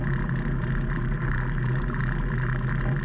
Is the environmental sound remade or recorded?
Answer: recorded